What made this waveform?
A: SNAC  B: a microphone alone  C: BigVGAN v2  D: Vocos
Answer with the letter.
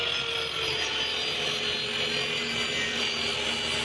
B